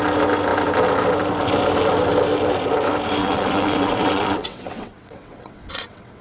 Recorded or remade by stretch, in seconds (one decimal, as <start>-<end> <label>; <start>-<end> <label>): 0.0-3.2 recorded; 3.2-6.2 remade